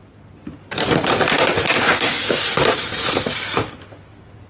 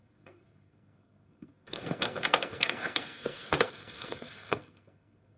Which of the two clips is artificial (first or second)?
second